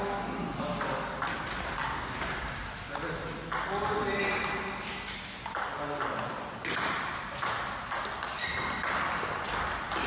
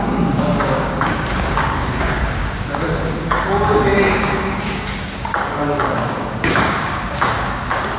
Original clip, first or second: first